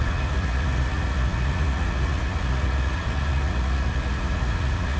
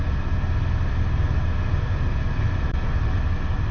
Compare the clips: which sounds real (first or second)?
second